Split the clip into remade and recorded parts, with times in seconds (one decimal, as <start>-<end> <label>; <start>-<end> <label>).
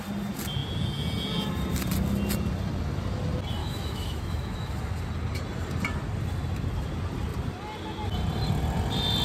0.0-3.6 recorded; 3.6-5.0 remade; 5.0-9.2 recorded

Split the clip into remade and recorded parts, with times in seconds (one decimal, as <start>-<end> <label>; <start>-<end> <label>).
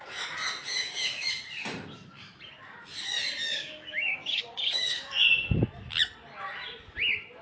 0.0-0.7 recorded; 0.7-1.3 remade; 1.3-3.5 recorded; 3.5-5.2 remade; 5.2-7.4 recorded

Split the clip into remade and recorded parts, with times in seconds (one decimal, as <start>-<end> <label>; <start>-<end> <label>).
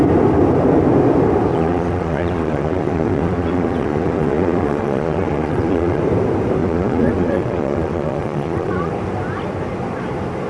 0.0-1.5 recorded; 1.5-6.0 remade; 6.0-6.6 recorded; 6.6-8.9 remade; 8.9-10.5 recorded